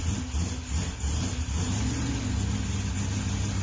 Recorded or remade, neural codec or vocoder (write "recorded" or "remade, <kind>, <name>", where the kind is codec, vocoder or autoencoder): recorded